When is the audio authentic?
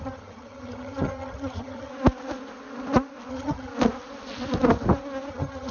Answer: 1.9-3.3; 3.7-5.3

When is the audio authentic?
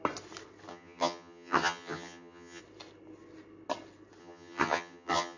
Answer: 0.0-0.7; 2.6-4.2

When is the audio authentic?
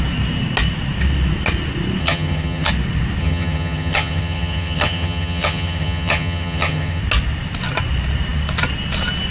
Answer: 0.0-2.0; 2.7-3.2; 7.0-9.3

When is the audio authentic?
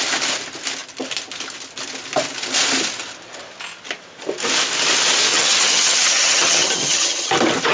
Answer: 0.0-5.3; 7.3-7.7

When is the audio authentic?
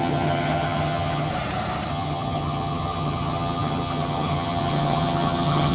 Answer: 1.3-1.9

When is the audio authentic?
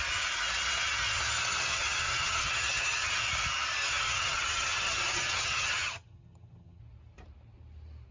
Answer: 0.0-1.7; 3.1-3.9; 6.8-8.1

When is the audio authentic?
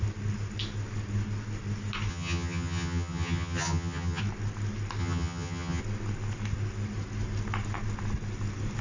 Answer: 0.0-2.1; 4.2-5.0; 5.8-8.8